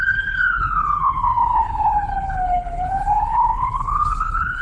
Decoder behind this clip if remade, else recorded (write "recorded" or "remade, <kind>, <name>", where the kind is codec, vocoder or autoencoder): remade, codec, HILCodec